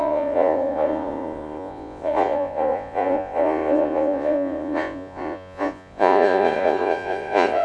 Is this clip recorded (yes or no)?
no